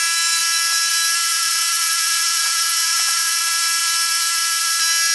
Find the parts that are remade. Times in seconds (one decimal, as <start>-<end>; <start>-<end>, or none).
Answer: 1.3-3.4